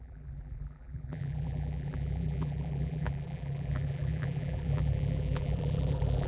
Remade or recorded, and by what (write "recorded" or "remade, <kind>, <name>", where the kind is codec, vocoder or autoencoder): remade, vocoder, BigVGAN v2